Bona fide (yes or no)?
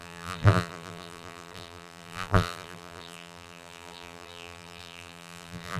no